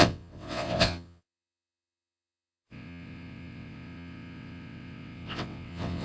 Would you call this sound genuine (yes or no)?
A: no